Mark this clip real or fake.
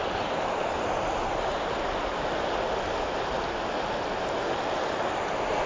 real